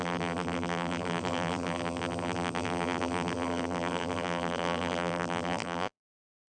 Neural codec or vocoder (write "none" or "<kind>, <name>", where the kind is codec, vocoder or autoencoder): vocoder, BigVGAN v2